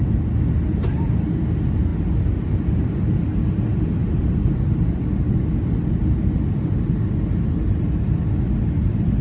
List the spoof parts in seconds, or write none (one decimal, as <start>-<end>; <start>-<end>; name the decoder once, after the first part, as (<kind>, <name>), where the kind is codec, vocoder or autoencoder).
none